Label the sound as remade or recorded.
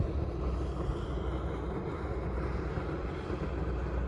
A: recorded